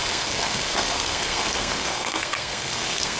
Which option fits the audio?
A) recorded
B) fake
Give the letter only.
B